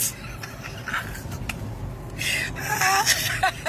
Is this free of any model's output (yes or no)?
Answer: yes